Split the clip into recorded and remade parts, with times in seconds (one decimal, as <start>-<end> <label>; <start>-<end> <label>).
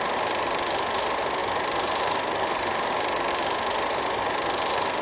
0.0-5.0 recorded